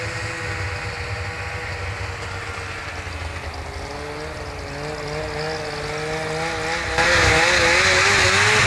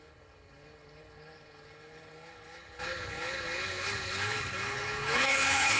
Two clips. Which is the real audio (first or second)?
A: first